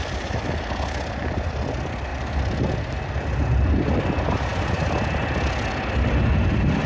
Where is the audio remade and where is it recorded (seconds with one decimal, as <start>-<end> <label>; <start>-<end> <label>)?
0.0-6.9 recorded